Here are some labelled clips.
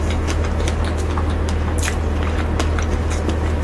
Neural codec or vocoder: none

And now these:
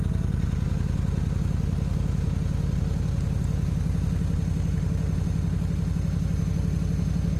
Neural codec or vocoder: none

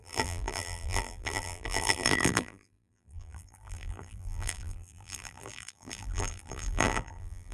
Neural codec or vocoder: vocoder, BigVGAN v2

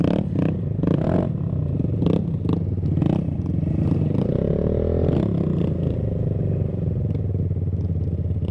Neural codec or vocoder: none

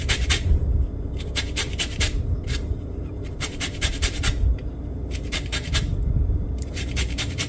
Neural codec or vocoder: vocoder, BigVGAN v2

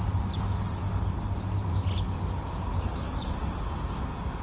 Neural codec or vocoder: none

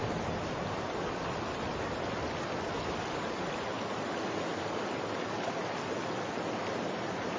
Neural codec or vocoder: none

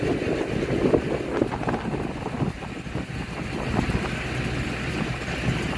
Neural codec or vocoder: none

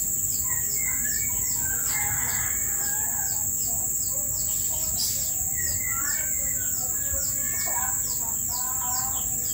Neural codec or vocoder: none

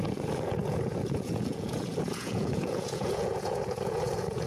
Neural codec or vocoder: vocoder, Vocos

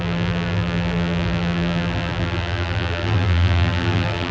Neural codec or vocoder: vocoder, BigVGAN v2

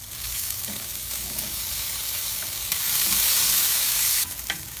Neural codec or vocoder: codec, DAC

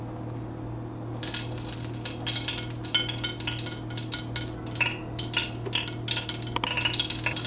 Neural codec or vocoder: none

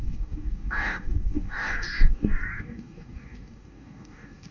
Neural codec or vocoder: codec, DAC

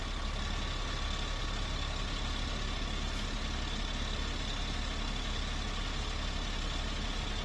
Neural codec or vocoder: none